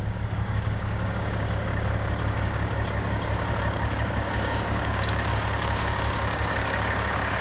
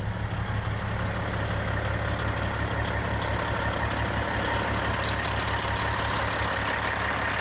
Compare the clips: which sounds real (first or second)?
second